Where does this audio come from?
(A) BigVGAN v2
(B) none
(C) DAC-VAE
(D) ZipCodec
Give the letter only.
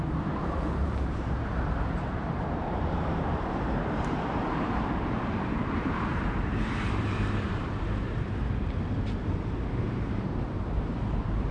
A